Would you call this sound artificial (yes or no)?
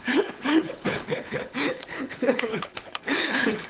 yes